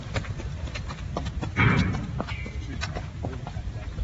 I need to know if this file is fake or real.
real